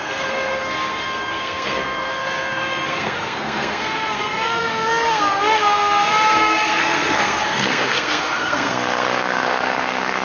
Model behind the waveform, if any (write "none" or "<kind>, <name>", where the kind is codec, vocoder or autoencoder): codec, SNAC